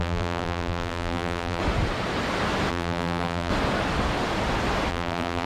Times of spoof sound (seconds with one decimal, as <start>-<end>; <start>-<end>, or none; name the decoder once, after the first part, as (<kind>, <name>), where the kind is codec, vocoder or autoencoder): 0.0-1.6 (vocoder, BigVGAN v2); 2.7-3.5; 4.9-5.4